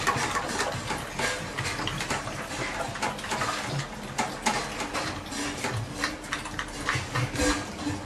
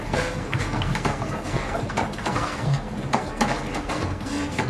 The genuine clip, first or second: first